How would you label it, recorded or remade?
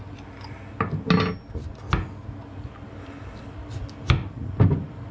recorded